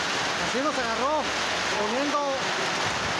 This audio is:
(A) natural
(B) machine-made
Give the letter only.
A